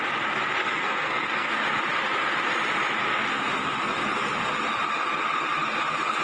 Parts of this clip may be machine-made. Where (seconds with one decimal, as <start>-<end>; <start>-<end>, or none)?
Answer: 0.6-1.5